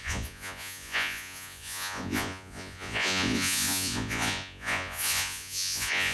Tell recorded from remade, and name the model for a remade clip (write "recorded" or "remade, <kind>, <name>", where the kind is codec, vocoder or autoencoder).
remade, vocoder, Vocos